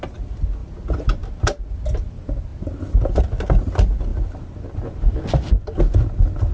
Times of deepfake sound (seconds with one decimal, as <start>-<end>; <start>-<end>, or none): none